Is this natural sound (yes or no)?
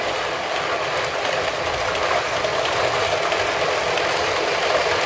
yes